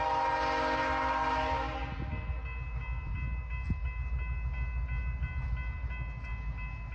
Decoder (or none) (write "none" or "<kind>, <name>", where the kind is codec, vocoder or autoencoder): none